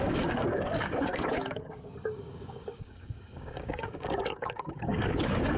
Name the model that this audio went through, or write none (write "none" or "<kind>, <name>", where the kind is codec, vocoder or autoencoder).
codec, DAC